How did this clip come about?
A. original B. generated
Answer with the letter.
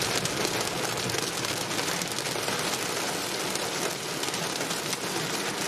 A